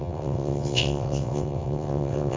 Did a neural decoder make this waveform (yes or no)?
yes